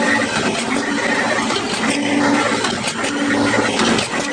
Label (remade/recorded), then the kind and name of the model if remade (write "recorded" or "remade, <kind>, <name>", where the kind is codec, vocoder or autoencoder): recorded